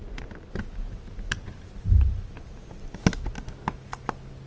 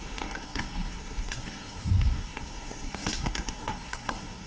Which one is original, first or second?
first